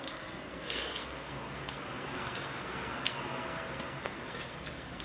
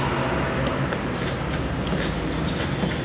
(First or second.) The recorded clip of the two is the second